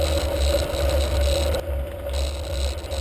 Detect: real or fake real